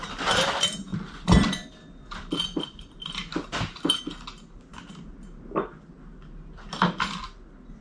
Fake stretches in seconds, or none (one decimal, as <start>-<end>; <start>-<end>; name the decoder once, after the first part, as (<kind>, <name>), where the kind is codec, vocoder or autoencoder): 0.9-4.0 (vocoder, BigVGAN v2)